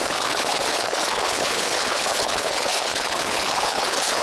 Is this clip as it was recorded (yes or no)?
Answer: no